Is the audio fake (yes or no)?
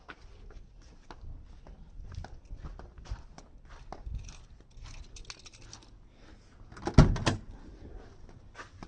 no